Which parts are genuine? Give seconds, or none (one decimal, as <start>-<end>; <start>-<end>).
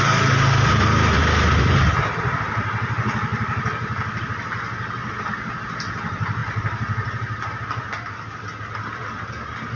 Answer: none